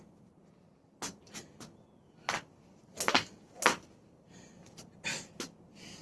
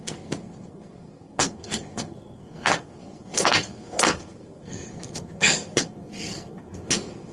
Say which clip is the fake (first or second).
second